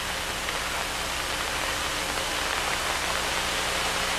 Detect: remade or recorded recorded